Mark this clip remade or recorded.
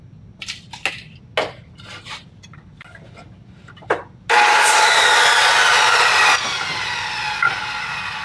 recorded